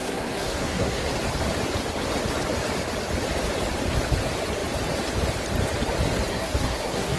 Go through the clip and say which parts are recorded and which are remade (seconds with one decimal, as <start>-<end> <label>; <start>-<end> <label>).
0.0-1.1 remade; 1.1-6.3 recorded; 6.3-7.2 remade